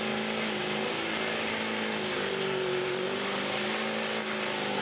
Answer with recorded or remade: recorded